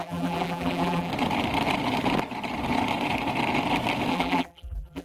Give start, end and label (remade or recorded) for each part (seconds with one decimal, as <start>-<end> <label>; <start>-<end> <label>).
0.0-1.1 remade; 1.1-4.1 recorded; 4.1-5.0 remade